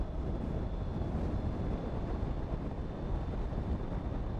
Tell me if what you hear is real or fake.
real